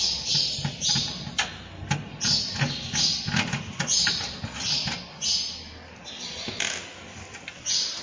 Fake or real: real